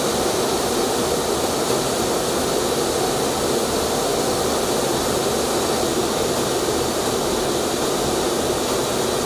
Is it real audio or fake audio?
real